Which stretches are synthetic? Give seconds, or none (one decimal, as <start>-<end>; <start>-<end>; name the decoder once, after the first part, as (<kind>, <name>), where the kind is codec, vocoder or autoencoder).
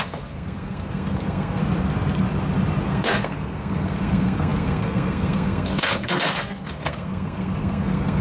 0.0-1.6 (codec, SNAC); 2.8-8.2